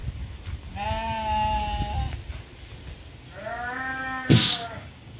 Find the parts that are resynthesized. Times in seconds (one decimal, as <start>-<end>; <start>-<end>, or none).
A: 3.9-5.2